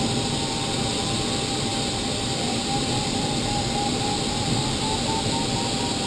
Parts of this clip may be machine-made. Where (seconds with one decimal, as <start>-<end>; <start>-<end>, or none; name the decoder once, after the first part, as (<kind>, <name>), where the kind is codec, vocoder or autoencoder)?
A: none